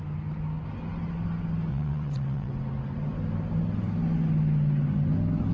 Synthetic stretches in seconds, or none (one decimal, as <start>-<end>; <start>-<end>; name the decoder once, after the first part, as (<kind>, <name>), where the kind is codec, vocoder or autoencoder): 1.7-2.5 (vocoder, WaveNeXt)